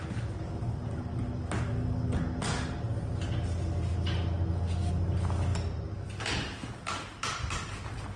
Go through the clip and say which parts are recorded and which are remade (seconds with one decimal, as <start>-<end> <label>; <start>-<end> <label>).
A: 0.0-8.2 recorded